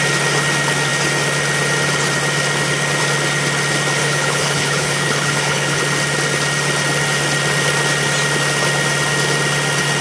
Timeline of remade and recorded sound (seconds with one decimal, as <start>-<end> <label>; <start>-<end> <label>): 0.0-4.0 recorded; 4.0-5.8 remade; 5.8-10.0 recorded